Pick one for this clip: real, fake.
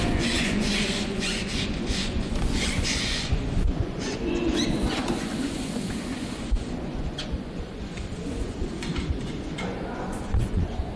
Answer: fake